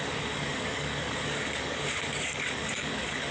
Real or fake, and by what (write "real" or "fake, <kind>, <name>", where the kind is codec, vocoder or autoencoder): fake, codec, DAC